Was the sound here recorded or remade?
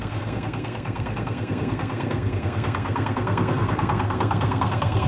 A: remade